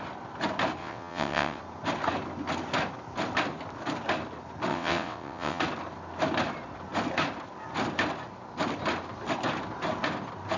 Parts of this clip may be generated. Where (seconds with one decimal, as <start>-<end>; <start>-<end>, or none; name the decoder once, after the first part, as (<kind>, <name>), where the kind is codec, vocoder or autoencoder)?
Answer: 0.8-1.6 (vocoder, WaveNeXt); 4.7-5.6